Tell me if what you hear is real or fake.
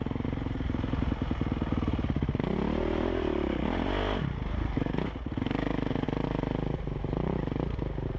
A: real